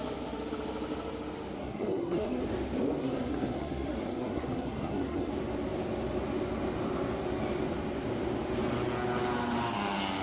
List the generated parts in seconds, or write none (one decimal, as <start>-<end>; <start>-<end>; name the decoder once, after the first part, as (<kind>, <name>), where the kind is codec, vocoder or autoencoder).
1.6-2.4 (codec, SNAC); 3.0-5.3